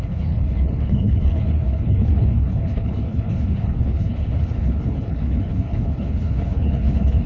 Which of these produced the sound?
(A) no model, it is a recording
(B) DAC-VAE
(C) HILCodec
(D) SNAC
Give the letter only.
C